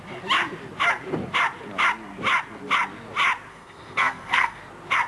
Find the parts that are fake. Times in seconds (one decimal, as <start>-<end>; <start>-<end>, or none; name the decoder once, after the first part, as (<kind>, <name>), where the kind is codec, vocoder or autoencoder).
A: 3.5-4.6 (codec, SNAC)